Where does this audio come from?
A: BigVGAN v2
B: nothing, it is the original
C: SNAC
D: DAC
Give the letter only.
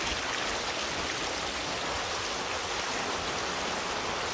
B